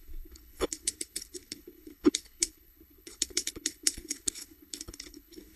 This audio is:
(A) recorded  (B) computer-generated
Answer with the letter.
B